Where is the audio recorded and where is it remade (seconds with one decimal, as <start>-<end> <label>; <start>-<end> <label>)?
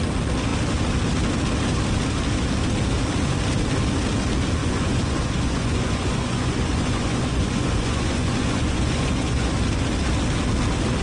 0.0-4.6 recorded; 4.6-9.5 remade; 9.5-11.0 recorded